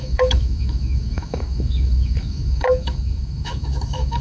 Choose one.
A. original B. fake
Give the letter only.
B